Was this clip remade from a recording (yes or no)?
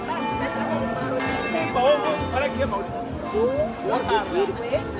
no